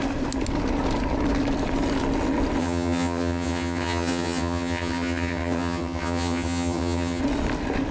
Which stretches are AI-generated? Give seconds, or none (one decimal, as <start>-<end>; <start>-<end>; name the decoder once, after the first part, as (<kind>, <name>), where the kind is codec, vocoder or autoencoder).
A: 2.6-7.2 (vocoder, HiFi-GAN)